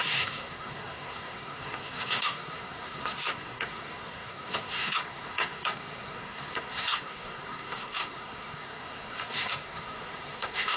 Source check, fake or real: fake